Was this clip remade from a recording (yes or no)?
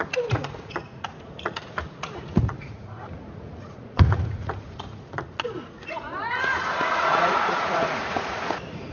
yes